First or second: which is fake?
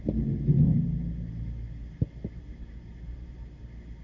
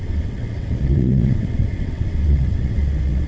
second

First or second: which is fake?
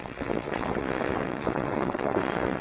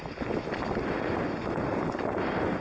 first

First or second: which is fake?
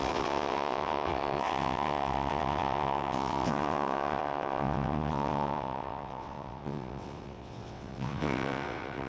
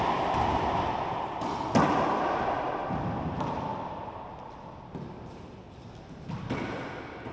first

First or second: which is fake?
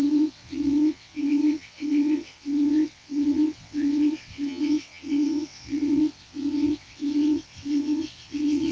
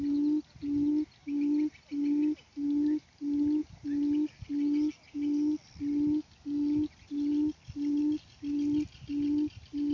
first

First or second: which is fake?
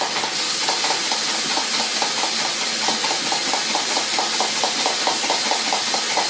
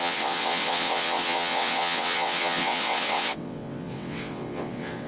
second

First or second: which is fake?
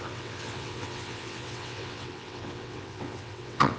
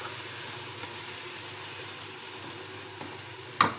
first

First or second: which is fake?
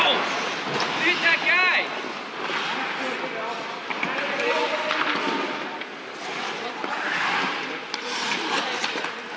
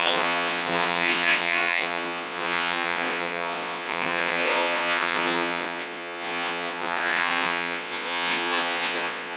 second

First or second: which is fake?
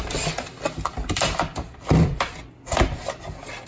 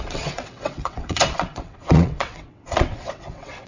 second